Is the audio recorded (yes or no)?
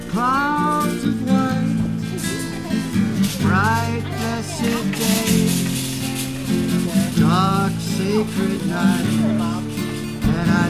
yes